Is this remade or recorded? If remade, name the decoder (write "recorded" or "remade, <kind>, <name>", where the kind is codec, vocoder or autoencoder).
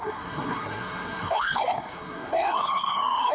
remade, codec, SNAC